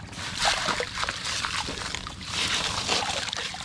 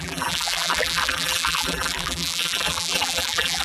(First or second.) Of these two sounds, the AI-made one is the second